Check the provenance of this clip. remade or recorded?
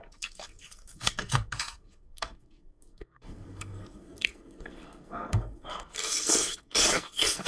remade